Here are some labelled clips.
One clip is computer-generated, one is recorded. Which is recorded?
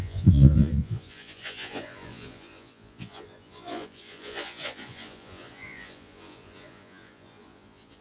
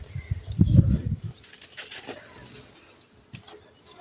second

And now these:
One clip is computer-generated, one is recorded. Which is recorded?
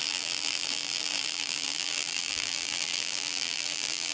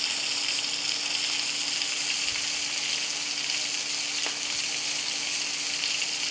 second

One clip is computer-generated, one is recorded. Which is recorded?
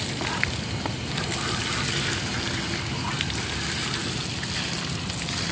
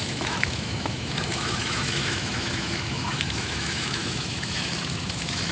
first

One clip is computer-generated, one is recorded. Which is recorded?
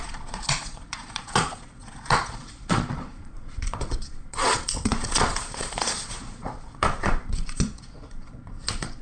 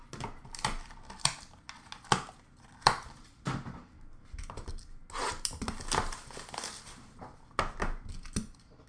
second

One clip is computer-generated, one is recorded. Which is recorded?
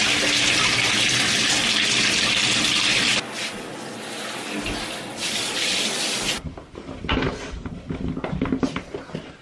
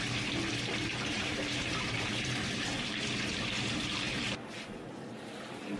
first